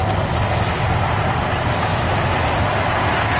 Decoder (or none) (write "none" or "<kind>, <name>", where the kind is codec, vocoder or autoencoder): none